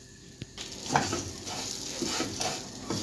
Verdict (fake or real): real